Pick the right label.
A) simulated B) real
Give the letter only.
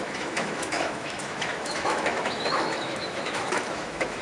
A